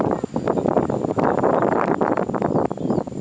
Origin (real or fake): real